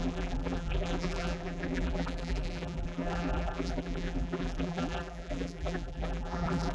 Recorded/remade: remade